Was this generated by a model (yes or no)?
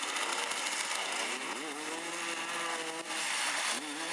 no